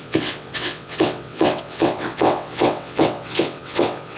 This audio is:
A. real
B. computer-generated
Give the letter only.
B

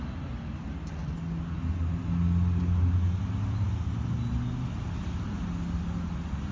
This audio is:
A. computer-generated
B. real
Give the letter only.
B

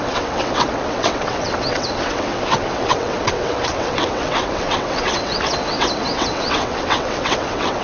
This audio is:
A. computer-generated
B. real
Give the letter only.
A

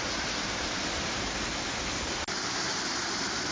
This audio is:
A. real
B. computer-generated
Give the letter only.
A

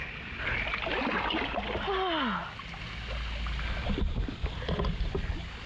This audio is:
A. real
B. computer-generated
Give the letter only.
A